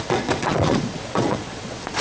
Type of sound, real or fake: fake